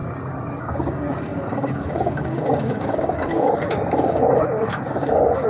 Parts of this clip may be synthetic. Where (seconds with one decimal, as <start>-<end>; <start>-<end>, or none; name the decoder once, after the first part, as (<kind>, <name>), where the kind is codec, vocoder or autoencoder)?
0.6-5.5 (codec, DAC)